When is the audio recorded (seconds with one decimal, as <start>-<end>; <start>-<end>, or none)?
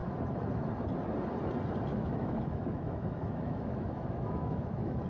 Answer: 0.7-1.9